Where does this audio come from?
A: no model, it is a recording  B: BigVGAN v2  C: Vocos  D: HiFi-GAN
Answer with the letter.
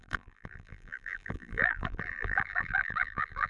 B